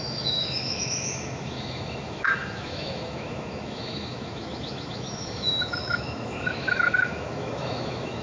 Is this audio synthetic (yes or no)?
yes